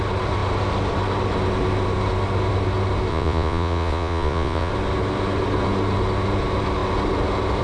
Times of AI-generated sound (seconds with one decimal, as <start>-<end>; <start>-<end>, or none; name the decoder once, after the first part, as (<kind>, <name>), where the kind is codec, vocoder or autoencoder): 3.1-4.7 (vocoder, Vocos)